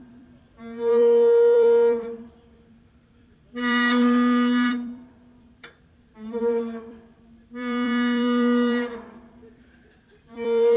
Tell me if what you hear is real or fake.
fake